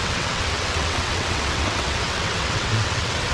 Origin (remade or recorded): remade